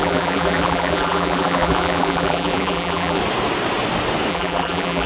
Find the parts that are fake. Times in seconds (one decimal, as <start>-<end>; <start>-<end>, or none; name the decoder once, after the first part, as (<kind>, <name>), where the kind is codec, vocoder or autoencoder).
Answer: 0.0-3.2 (vocoder, BigVGAN v2); 4.3-5.1